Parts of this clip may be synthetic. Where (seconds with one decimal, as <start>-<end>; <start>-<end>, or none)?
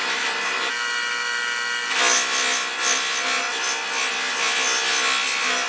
none